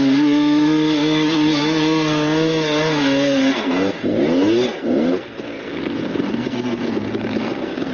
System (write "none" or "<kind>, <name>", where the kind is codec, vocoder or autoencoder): codec, SNAC